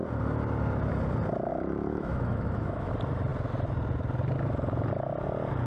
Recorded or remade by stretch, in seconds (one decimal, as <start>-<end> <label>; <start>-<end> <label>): 0.0-1.5 recorded; 1.5-2.9 remade; 2.9-5.7 recorded